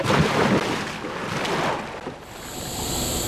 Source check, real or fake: real